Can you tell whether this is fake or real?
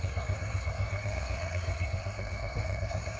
fake